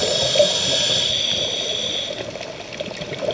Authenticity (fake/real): real